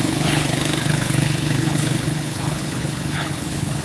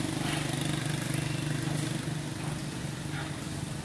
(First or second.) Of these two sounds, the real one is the second